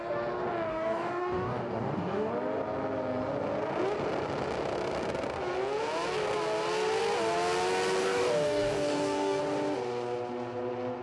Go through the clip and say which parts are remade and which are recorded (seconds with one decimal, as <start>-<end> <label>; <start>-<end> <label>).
0.0-0.7 recorded; 0.7-2.3 remade; 2.3-8.0 recorded; 8.0-9.4 remade; 9.4-11.0 recorded